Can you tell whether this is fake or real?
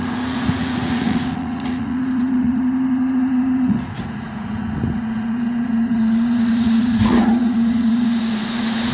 fake